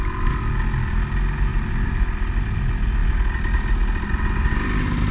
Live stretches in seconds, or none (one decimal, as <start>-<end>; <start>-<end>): 0.0-1.5; 2.0-5.1